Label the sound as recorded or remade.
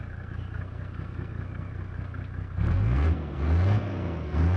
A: remade